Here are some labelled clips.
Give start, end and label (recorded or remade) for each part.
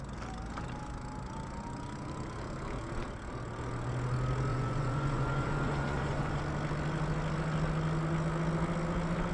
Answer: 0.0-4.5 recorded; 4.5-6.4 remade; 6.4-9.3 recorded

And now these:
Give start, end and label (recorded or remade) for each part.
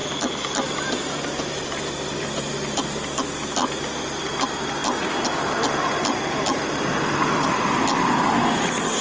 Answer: 0.0-9.0 recorded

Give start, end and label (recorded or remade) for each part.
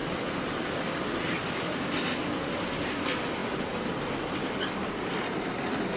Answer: 0.0-6.0 recorded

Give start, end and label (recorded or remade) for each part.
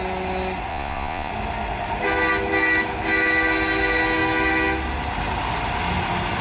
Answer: 0.0-0.7 recorded; 0.7-1.3 remade; 1.3-6.4 recorded